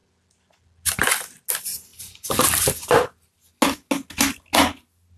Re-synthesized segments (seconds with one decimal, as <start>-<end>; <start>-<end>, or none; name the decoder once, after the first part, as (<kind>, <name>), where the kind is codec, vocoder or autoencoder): none